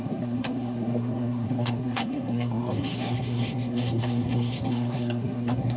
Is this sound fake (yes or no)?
yes